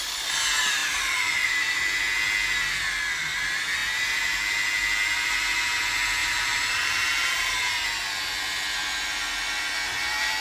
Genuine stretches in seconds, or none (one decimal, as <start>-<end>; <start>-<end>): 0.0-0.8; 1.8-6.2; 7.5-10.4